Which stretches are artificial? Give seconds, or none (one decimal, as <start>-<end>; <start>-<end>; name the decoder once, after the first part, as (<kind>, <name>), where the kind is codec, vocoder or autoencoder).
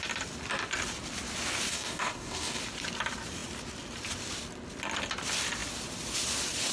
1.7-2.6 (codec, DAC)